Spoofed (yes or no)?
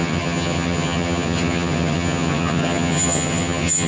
yes